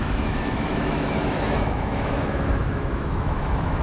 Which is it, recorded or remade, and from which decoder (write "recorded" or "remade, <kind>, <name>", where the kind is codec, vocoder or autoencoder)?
remade, autoencoder, DAC-VAE